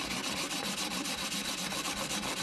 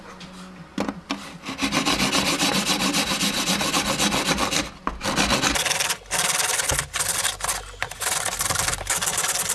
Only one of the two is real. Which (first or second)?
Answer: second